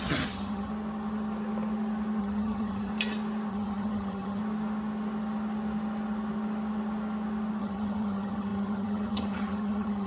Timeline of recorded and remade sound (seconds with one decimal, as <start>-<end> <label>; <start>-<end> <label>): 0.0-0.7 remade; 0.7-2.2 recorded; 2.2-2.9 remade; 2.9-3.5 recorded; 3.5-4.4 remade; 4.4-7.6 recorded; 7.6-10.1 remade

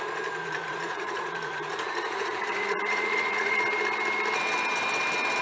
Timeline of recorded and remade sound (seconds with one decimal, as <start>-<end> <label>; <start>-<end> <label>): 0.0-0.4 recorded; 0.4-3.6 remade; 3.6-5.4 recorded

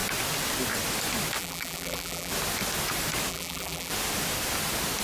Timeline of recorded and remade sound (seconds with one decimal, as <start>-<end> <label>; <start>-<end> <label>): 0.0-1.4 recorded; 1.4-2.3 remade; 2.3-3.3 recorded; 3.3-3.9 remade; 3.9-5.0 recorded

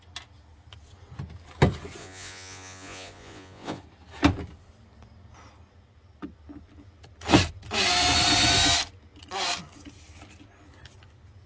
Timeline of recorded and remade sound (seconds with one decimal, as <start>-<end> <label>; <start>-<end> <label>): 0.0-2.0 recorded; 2.0-3.8 remade; 3.8-11.5 recorded

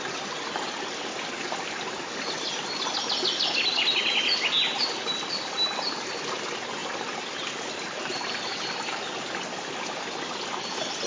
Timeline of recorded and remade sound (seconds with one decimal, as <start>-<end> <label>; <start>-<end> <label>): 0.0-11.1 recorded

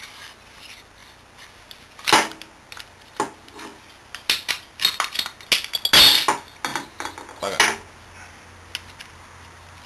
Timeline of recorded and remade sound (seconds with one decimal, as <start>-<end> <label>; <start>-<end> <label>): 0.0-9.9 recorded